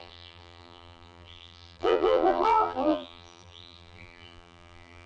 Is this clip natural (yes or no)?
no